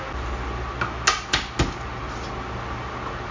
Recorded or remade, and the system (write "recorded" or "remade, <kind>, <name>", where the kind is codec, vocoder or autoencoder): recorded